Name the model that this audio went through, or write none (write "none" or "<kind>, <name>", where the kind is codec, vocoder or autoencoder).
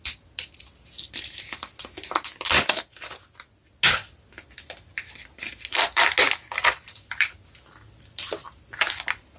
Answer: none